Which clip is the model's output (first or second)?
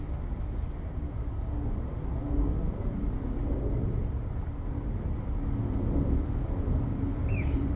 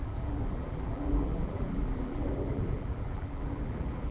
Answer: second